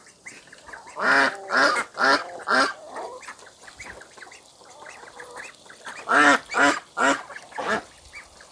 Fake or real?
real